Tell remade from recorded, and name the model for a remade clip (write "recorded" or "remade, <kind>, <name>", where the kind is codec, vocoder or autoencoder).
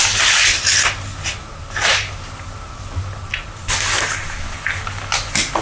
recorded